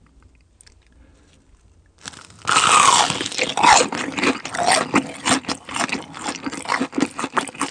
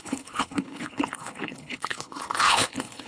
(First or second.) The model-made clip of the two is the second